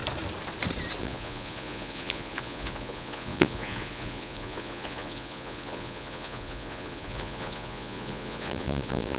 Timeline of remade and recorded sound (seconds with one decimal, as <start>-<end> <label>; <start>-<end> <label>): 0.0-1.0 recorded; 1.0-9.2 remade